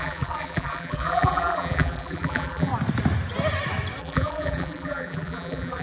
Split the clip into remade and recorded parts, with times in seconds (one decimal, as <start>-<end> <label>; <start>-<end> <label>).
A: 0.0-2.7 remade; 2.7-4.0 recorded; 4.0-5.8 remade